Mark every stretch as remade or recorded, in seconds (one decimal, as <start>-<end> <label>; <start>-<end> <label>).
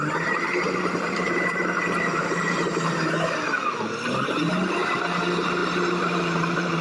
0.0-6.8 remade